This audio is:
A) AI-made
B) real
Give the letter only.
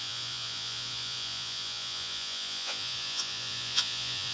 A